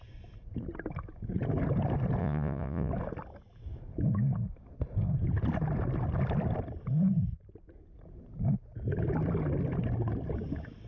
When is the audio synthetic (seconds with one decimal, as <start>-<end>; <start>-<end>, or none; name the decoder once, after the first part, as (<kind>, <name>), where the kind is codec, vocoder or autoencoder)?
2.2-2.9 (vocoder, Vocos)